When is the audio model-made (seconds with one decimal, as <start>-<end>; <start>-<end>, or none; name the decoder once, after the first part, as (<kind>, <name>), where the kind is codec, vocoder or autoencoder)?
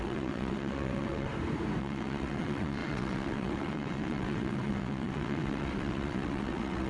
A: 0.0-1.3 (vocoder, WaveNeXt); 1.8-6.9